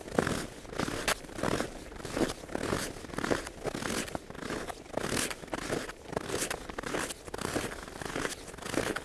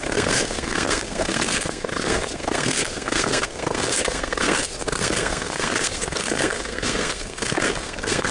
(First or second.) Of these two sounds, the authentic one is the first